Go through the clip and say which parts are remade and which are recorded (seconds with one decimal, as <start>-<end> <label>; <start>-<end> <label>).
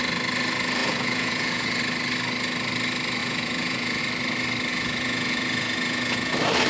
0.0-0.8 recorded; 0.8-1.8 remade; 1.8-3.2 recorded; 3.2-4.0 remade; 4.0-4.7 recorded; 4.7-6.3 remade; 6.3-6.7 recorded